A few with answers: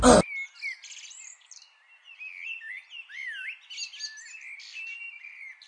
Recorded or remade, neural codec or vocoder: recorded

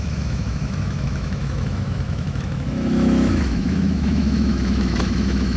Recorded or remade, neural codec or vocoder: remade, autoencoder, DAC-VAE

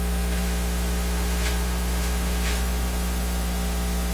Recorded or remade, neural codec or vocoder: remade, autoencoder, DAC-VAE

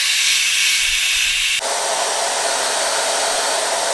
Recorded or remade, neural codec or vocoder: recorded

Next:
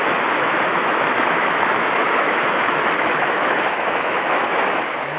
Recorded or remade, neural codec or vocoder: remade, autoencoder, DAC-VAE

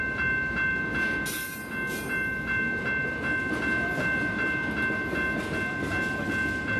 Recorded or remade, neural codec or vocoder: recorded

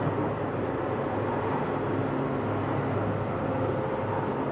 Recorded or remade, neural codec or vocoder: recorded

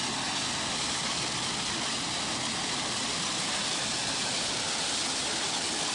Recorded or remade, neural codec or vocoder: recorded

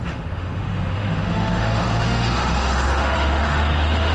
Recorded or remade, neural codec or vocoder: remade, autoencoder, DAC-VAE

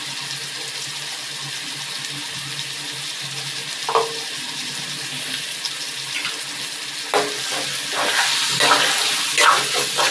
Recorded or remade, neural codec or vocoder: recorded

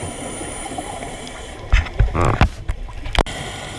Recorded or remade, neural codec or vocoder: recorded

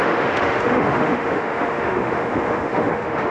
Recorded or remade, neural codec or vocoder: remade, autoencoder, DAC-VAE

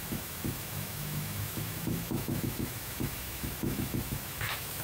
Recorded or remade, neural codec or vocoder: remade, autoencoder, DAC-VAE